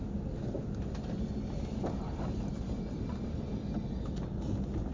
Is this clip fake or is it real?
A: real